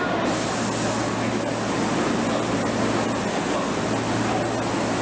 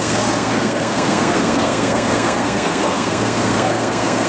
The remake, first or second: second